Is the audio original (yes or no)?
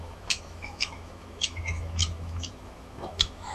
no